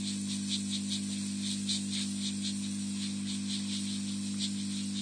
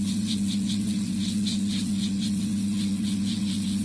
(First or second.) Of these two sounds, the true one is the first